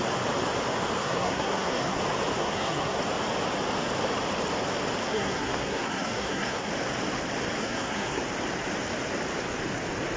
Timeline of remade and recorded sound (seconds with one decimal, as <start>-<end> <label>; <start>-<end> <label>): 0.0-1.0 recorded; 1.0-2.0 remade; 2.0-2.4 recorded; 2.4-3.0 remade; 3.0-5.0 recorded; 5.0-6.7 remade; 6.7-7.6 recorded; 7.6-8.2 remade; 8.2-10.2 recorded